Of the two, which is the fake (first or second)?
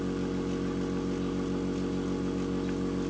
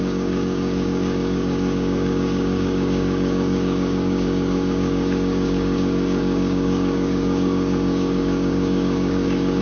second